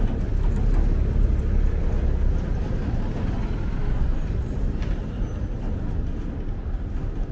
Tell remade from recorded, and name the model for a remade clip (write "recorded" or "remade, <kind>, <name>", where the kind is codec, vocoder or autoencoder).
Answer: recorded